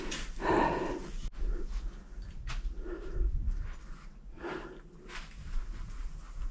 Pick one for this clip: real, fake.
real